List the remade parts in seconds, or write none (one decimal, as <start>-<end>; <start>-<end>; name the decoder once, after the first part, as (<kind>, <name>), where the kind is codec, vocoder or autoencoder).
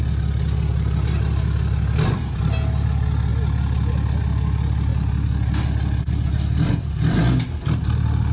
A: none